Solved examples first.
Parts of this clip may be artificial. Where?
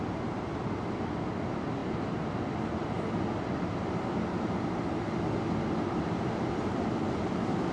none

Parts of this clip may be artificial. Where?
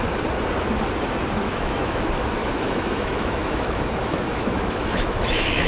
1.4-2.0 (autoencoder, DAC-VAE); 2.4-5.7